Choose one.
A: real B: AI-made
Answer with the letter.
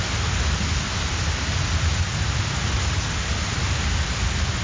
A